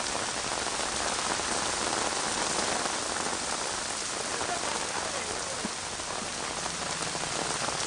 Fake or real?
real